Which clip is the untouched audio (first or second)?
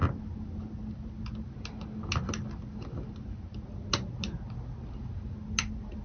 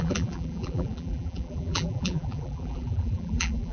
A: first